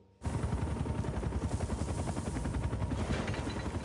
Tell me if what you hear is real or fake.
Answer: real